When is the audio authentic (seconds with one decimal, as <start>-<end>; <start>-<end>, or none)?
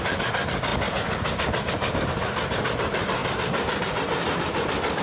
0.0-0.7; 2.1-3.2